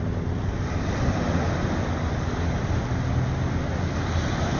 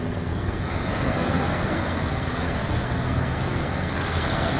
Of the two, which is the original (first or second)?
first